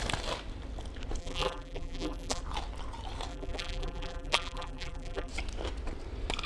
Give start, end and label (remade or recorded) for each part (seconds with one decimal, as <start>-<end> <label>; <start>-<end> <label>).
0.0-1.2 recorded; 1.2-2.4 remade; 2.4-3.3 recorded; 3.3-5.3 remade; 5.3-6.5 recorded